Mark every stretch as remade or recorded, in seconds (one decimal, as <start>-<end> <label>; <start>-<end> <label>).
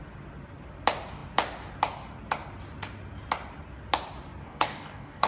0.0-4.4 recorded; 4.4-5.3 remade